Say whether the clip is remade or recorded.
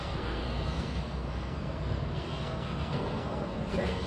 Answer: remade